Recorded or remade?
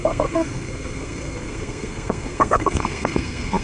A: remade